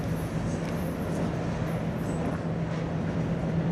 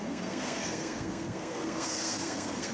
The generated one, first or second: second